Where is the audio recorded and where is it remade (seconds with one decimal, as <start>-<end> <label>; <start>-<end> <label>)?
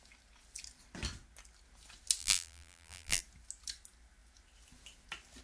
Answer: 0.0-2.2 recorded; 2.2-3.2 remade; 3.2-5.4 recorded